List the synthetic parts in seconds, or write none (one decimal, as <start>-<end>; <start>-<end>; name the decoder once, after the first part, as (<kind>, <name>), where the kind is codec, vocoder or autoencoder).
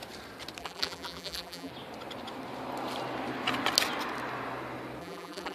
0.6-1.7 (vocoder, BigVGAN v2); 5.0-5.5